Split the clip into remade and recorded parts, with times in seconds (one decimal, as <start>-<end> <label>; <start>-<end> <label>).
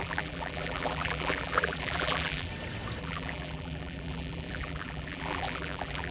0.0-2.5 remade; 2.5-3.0 recorded; 3.0-6.1 remade